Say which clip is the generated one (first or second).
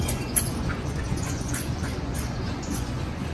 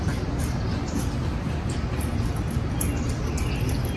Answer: first